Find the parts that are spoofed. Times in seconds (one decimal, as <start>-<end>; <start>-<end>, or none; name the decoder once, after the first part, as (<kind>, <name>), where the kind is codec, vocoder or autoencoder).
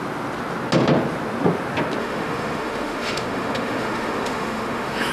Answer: 2.0-5.1 (autoencoder, DAC-VAE)